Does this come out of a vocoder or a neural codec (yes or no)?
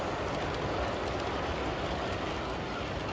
no